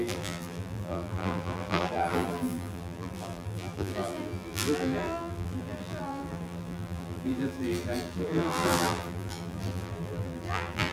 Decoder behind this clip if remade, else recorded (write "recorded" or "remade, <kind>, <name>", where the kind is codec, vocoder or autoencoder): remade, vocoder, BigVGAN v2